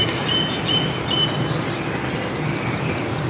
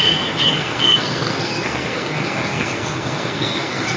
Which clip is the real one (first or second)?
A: first